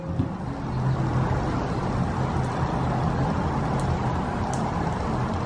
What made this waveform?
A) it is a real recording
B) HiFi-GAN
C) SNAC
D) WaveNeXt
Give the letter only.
A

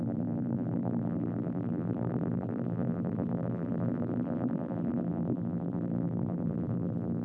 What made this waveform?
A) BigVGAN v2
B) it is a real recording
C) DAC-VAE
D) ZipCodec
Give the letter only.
A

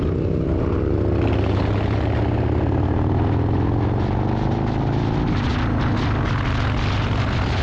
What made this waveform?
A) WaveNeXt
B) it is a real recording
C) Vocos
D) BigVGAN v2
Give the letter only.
B